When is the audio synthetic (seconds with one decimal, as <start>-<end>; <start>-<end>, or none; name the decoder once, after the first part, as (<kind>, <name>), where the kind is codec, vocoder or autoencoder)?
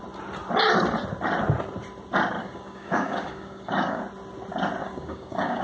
2.4-4.0 (codec, DAC); 4.8-5.6